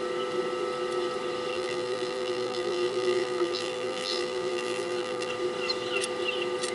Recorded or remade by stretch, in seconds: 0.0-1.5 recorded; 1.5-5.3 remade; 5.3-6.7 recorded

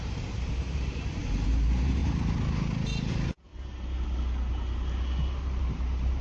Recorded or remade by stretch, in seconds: 0.0-3.5 remade; 3.5-5.6 recorded; 5.6-6.2 remade

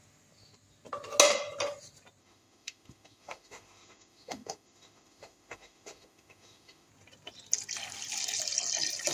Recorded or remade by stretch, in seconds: 0.0-2.2 recorded; 2.2-6.9 remade; 6.9-9.1 recorded

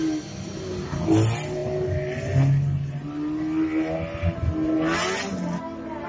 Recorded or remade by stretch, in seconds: 0.0-6.1 recorded

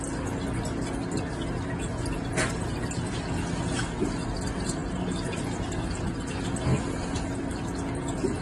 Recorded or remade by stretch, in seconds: 0.0-8.4 recorded